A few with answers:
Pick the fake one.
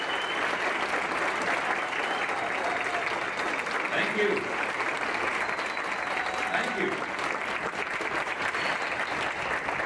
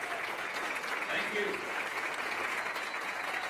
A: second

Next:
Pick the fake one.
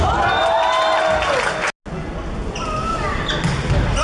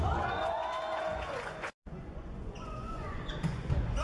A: second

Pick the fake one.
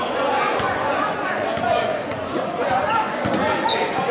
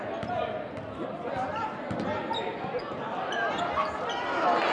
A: first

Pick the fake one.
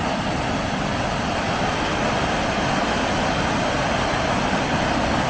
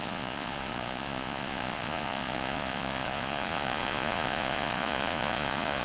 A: second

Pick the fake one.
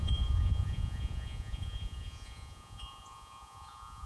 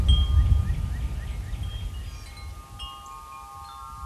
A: first